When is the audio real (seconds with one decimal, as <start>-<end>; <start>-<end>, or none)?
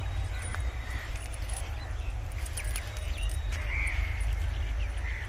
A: 0.0-0.5; 1.7-3.0; 4.2-5.3